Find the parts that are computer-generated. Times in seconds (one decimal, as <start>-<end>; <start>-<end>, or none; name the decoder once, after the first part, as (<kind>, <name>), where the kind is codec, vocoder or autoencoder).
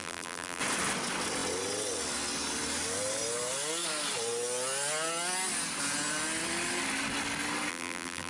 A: 0.0-0.6 (vocoder, BigVGAN v2); 7.7-8.3